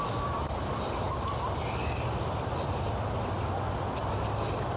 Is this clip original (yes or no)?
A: yes